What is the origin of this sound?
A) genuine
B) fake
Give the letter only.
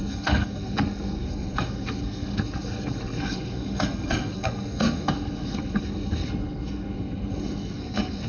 B